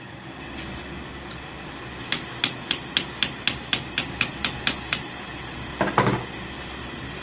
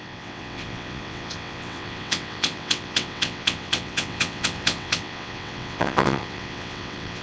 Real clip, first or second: first